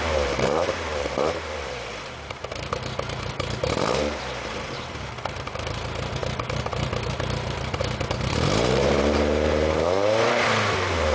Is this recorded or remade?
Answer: remade